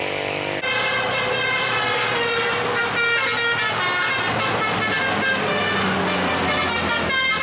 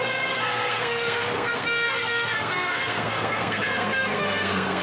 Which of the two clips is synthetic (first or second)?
second